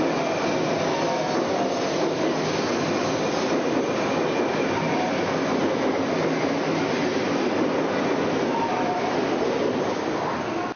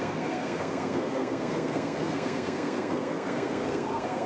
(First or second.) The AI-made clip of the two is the second